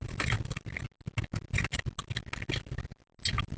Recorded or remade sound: recorded